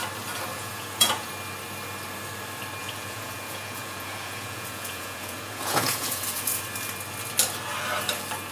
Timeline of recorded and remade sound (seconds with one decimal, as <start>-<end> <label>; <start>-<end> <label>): 0.0-0.5 recorded; 0.5-1.3 remade; 1.3-2.8 recorded; 2.8-6.6 remade; 6.6-8.5 recorded